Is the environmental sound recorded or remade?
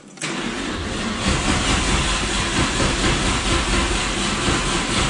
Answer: recorded